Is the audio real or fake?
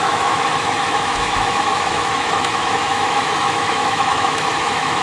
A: fake